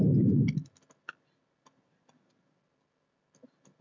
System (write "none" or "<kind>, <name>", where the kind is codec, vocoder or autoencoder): none